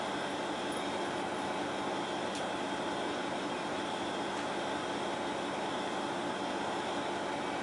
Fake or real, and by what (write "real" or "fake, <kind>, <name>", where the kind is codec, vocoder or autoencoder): real